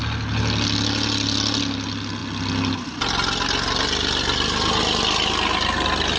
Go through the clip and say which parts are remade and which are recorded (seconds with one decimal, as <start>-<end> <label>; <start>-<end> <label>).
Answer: 0.0-6.2 recorded